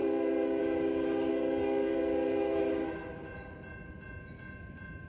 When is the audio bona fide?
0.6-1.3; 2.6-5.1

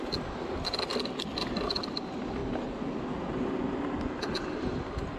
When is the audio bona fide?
0.0-5.2